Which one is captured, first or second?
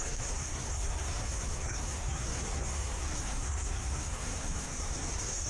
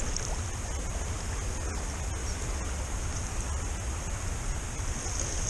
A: second